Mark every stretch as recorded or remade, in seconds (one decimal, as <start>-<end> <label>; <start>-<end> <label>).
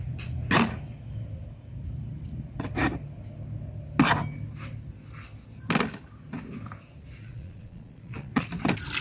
0.0-7.2 recorded; 7.2-8.5 remade; 8.5-9.0 recorded